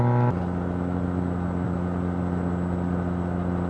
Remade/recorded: recorded